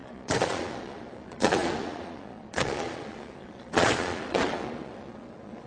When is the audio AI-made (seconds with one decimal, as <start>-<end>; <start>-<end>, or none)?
0.0-5.7